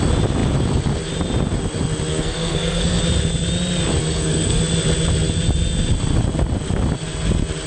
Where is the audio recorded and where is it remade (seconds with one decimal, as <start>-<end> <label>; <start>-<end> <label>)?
0.0-2.1 recorded; 2.1-3.0 remade; 3.0-4.0 recorded; 4.0-4.6 remade; 4.6-7.7 recorded